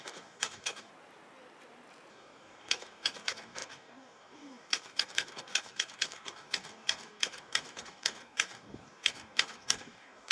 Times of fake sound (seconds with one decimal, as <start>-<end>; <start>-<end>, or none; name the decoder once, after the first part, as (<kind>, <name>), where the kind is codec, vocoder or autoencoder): 0.0-0.9 (codec, DAC); 2.1-10.3